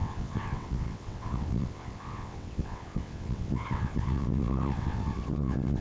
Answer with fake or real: fake